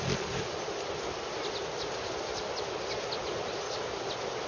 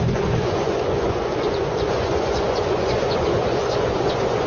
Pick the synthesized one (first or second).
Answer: second